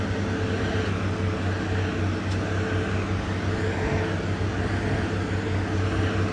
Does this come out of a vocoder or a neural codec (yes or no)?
no